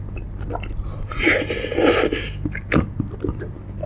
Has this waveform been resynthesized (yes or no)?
no